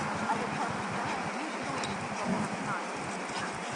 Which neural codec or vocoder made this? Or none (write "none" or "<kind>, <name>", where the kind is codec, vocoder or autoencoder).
none